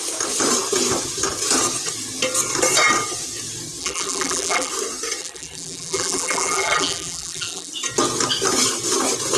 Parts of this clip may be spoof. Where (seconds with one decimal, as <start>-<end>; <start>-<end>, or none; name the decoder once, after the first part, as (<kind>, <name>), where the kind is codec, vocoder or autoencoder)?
3.8-4.7 (vocoder, BigVGAN v2); 5.2-7.7

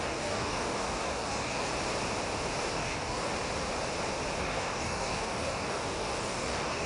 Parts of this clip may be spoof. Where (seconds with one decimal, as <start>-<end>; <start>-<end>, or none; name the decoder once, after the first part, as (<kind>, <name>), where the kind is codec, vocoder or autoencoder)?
0.0-1.7 (codec, DAC); 2.7-3.3; 4.4-6.9